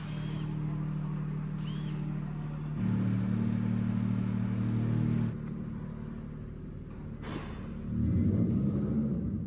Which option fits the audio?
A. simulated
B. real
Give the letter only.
B